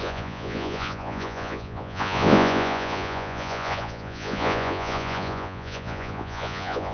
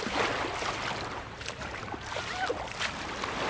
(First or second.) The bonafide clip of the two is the second